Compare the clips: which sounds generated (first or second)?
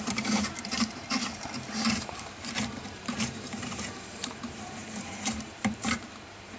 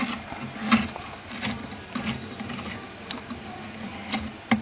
first